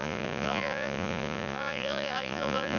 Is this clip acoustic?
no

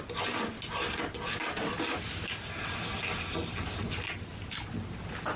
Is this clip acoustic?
yes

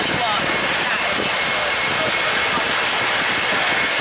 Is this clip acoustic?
yes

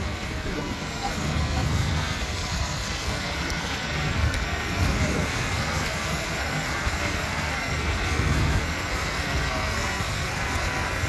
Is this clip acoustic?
no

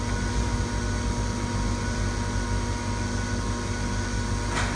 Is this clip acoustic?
yes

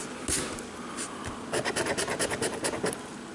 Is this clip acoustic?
yes